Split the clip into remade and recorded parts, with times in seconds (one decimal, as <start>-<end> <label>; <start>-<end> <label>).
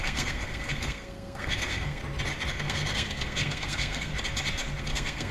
0.0-2.0 remade; 2.0-2.5 recorded; 2.5-4.1 remade; 4.1-4.8 recorded; 4.8-5.3 remade